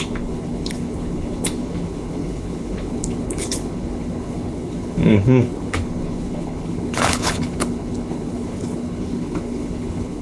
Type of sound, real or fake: fake